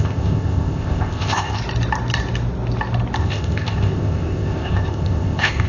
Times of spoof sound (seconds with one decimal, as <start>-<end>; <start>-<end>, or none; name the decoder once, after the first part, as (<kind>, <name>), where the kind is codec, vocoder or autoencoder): 0.0-1.6 (codec, ZipCodec); 3.2-5.7